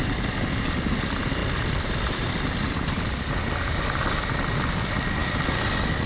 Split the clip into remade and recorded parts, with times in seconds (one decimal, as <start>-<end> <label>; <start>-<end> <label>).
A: 0.0-6.1 recorded